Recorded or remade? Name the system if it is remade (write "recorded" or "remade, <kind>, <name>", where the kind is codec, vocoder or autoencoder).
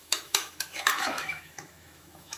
remade, autoencoder, DAC-VAE